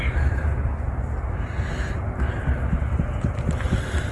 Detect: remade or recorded recorded